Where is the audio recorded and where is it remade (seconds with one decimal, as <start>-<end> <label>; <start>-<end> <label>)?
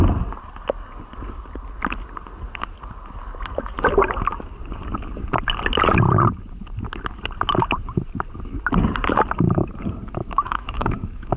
0.0-10.2 recorded; 10.2-11.4 remade